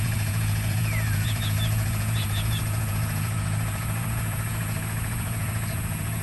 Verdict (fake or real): fake